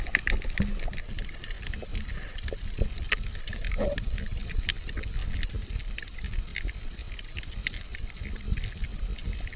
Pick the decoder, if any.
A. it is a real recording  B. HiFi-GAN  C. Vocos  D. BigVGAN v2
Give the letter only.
A